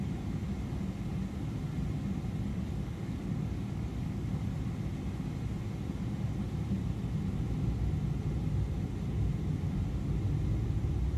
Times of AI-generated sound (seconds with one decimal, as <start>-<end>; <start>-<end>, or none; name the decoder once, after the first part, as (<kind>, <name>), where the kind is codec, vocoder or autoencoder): 2.5-4.5 (codec, DAC)